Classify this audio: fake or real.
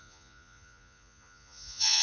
fake